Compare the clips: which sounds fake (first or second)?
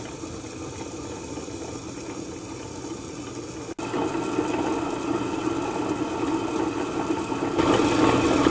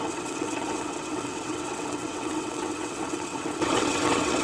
second